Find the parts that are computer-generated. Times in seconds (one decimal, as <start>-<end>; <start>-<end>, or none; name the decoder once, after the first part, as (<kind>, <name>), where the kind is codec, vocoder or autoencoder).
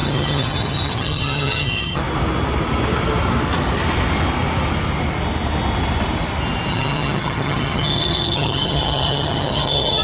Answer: 0.0-2.0 (vocoder, HiFi-GAN); 6.7-10.0